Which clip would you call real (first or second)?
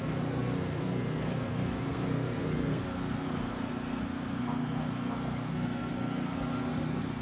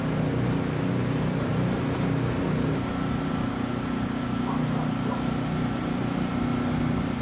second